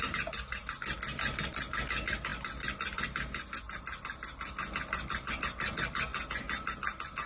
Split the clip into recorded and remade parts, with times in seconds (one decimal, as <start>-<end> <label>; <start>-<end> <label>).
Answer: 0.0-7.3 recorded